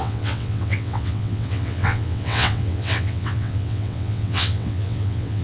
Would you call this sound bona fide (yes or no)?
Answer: no